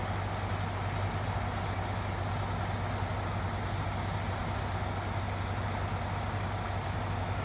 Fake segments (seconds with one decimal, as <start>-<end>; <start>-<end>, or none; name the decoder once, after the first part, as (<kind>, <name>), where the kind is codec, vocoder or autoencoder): none